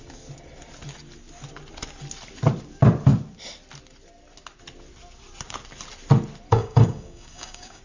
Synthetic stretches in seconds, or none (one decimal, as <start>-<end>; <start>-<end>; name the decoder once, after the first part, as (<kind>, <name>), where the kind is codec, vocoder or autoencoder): 6.5-7.8 (codec, DAC)